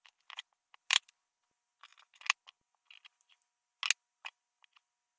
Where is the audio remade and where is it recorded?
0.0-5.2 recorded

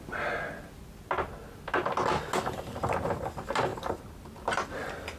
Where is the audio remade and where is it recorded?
0.0-5.2 recorded

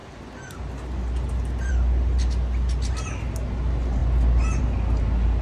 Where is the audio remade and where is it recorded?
0.0-5.4 recorded

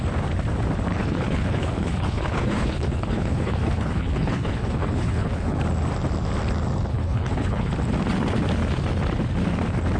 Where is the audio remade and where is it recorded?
0.0-0.9 recorded; 0.9-5.6 remade; 5.6-6.9 recorded; 6.9-7.7 remade; 7.7-10.0 recorded

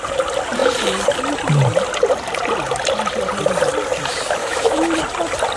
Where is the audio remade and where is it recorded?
0.0-4.4 recorded; 4.4-4.9 remade; 4.9-5.6 recorded

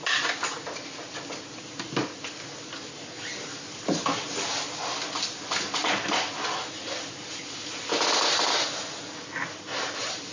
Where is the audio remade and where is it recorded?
0.0-10.3 recorded

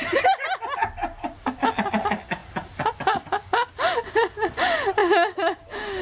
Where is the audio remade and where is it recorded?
0.0-5.0 recorded; 5.0-6.0 remade